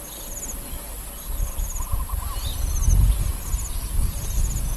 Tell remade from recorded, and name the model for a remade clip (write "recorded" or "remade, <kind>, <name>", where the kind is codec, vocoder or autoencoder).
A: recorded